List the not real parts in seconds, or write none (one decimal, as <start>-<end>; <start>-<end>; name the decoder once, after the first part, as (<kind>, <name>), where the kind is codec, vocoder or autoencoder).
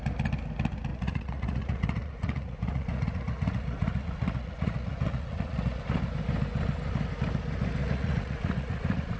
0.9-5.8 (vocoder, Vocos); 7.8-9.2